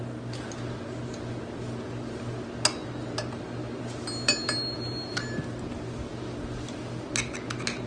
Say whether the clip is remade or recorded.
recorded